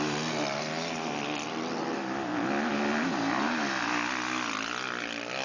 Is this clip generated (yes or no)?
no